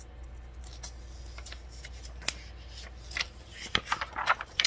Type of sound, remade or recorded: recorded